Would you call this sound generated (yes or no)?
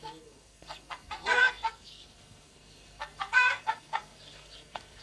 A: yes